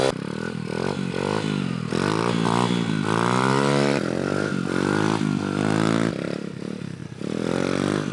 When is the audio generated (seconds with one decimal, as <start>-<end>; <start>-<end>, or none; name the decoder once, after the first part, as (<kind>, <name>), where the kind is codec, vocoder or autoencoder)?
none